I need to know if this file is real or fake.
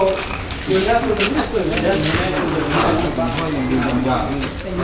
real